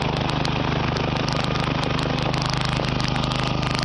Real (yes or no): yes